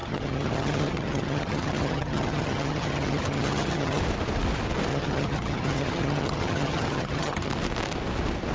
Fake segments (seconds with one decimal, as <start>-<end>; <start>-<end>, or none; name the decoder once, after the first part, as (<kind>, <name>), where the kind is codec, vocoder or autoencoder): 0.0-4.0 (vocoder, HiFi-GAN); 4.9-7.5